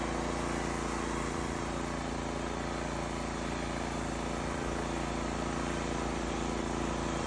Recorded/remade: recorded